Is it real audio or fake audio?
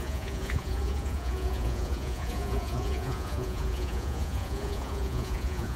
fake